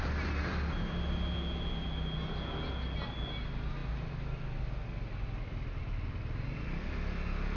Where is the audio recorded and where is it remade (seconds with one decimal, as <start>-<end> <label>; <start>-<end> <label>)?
0.0-7.6 recorded